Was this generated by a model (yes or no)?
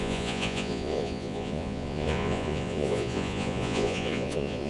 yes